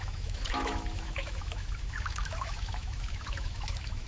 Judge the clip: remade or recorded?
remade